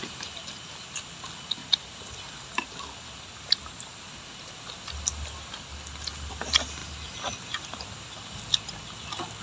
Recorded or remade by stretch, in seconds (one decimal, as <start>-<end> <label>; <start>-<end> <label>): 0.0-9.4 recorded